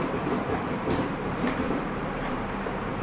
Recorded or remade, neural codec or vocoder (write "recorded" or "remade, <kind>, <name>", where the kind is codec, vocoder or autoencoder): remade, vocoder, BigVGAN v2